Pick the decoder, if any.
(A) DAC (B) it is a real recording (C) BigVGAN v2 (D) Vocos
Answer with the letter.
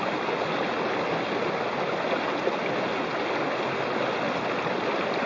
B